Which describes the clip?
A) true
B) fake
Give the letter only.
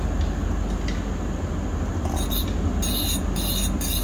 A